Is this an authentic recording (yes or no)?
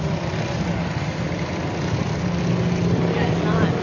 yes